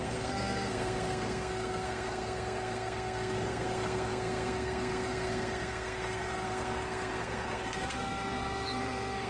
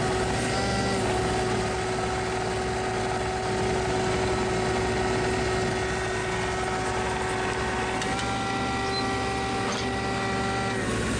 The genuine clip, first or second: second